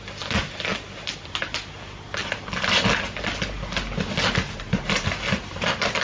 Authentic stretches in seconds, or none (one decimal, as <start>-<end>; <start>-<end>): 0.0-6.0